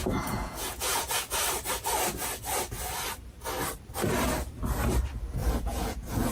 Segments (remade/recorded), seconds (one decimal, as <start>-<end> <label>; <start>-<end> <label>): 0.0-1.1 remade; 1.1-5.4 recorded; 5.4-6.3 remade